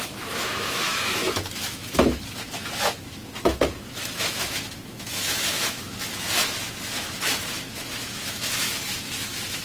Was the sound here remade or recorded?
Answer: remade